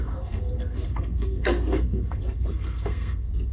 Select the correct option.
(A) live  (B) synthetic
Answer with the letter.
B